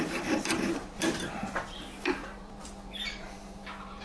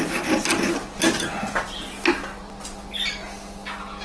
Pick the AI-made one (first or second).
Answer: first